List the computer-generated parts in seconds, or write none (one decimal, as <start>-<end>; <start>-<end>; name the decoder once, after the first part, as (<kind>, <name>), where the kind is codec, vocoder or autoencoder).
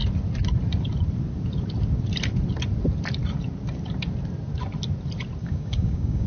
5.4-6.3 (codec, DAC)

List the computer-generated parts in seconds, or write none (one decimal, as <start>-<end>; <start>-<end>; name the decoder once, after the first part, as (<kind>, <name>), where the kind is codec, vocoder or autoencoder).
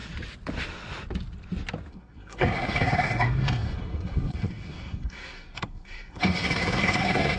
1.9-7.4 (codec, SNAC)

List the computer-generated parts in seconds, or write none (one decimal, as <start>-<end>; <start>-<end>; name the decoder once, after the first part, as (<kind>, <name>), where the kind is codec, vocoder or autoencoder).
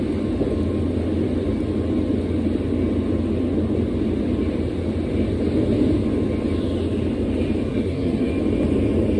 7.7-8.3 (codec, SNAC)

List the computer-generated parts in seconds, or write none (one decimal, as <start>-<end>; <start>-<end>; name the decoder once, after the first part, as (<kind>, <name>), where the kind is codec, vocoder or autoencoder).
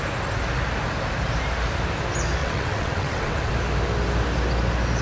2.4-3.5 (vocoder, WaveNeXt)